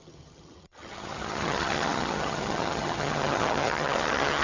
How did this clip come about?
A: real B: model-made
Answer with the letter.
B